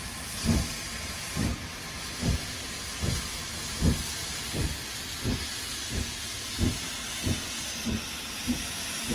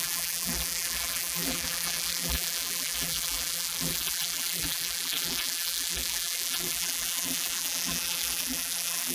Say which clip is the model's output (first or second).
second